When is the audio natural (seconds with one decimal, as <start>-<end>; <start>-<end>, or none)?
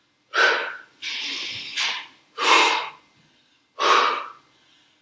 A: 0.0-0.6; 2.9-5.0